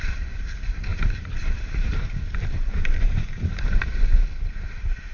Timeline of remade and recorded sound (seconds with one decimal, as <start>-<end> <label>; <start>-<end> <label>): 0.0-0.9 recorded; 0.9-4.0 remade; 4.0-5.1 recorded